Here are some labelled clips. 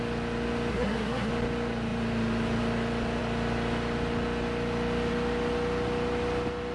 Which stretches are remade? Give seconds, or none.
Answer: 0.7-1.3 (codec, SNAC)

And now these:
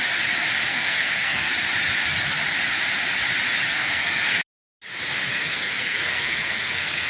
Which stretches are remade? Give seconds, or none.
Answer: 0.7-1.5 (codec, SNAC); 3.7-4.4; 5.3-7.1

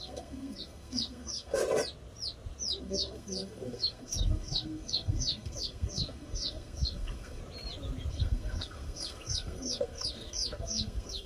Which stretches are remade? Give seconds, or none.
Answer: 0.0-1.6 (codec, SNAC); 2.8-7.4; 8.1-11.3

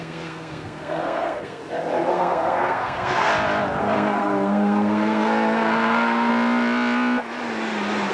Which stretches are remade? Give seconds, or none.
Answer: 0.0-1.6 (codec, SNAC); 2.1-3.3; 3.8-6.3

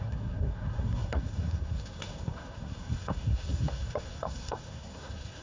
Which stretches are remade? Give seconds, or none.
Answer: 0.0-5.4 (codec, SNAC)

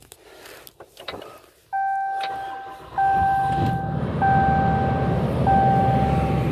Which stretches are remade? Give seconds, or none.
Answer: none

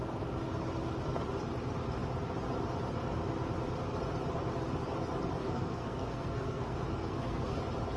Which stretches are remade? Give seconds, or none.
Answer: 5.4-7.6 (codec, SNAC)

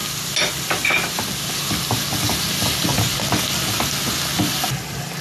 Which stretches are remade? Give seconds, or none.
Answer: none